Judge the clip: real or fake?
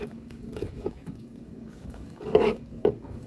fake